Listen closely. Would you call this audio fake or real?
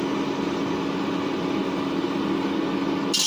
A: real